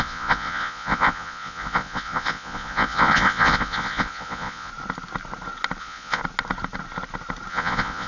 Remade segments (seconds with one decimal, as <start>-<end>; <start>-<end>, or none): 0.0-4.7; 5.8-6.2; 7.5-8.1